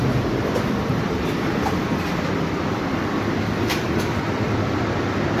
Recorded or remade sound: remade